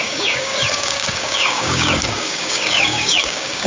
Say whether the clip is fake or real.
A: fake